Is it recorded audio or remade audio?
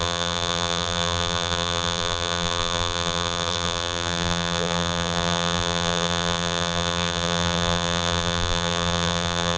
remade